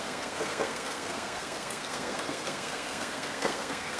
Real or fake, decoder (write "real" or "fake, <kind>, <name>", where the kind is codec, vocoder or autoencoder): fake, codec, SNAC